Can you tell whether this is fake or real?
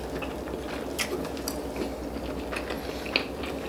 real